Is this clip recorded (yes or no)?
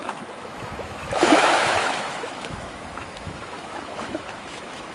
no